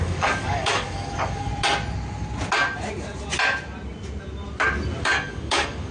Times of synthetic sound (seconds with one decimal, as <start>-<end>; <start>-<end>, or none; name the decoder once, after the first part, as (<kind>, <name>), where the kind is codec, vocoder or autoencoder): 0.0-1.5 (codec, DAC); 5.0-5.9

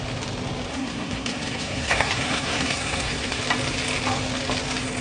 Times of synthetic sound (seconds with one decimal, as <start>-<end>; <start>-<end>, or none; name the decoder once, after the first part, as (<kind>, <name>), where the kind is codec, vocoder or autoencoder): 0.7-3.4 (codec, SNAC)

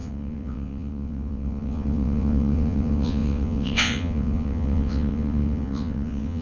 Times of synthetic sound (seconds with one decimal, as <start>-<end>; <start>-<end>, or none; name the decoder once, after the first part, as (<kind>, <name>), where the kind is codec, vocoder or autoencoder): 0.0-6.4 (vocoder, WaveNeXt)